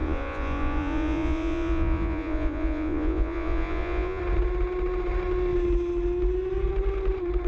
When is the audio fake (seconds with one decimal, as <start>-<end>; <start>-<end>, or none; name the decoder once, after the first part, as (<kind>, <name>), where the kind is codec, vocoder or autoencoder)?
0.0-4.2 (vocoder, Vocos)